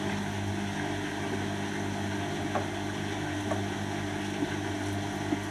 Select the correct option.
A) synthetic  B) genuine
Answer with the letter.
B